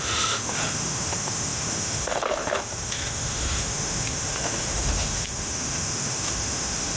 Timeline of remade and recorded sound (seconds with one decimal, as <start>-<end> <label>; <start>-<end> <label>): 0.0-7.0 remade

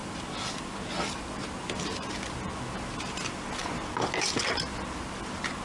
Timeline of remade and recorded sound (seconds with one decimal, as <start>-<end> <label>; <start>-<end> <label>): 0.0-5.6 recorded

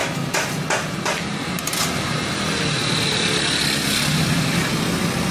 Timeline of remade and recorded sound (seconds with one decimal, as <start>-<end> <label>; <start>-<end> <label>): 0.0-5.3 recorded

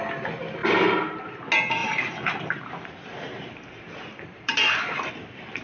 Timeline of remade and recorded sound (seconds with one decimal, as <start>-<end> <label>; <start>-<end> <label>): 0.0-0.6 recorded; 0.6-1.3 remade; 1.3-1.8 recorded; 1.8-5.1 remade; 5.1-5.6 recorded

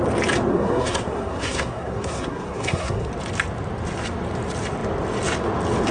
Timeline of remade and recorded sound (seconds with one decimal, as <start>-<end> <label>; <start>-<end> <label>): 0.0-0.5 recorded; 0.5-3.1 remade; 3.1-5.9 recorded